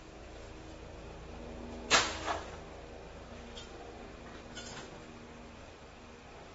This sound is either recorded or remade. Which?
recorded